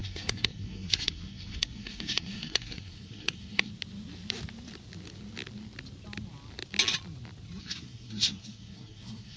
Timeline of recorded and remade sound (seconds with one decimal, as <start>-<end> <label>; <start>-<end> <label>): 0.0-3.7 remade; 3.7-7.6 recorded; 7.6-9.4 remade